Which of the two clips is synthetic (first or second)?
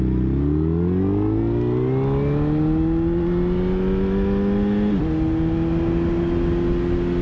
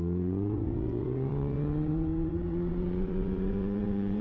second